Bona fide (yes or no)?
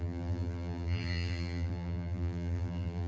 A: no